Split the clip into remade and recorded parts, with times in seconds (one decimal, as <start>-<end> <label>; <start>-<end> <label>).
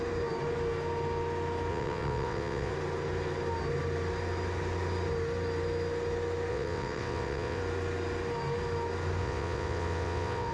0.0-1.7 recorded; 1.7-2.7 remade; 2.7-6.5 recorded; 6.5-7.6 remade; 7.6-9.2 recorded; 9.2-10.5 remade